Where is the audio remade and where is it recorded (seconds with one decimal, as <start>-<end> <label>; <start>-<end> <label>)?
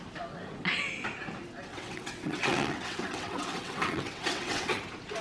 0.0-1.7 recorded; 1.7-4.8 remade; 4.8-5.2 recorded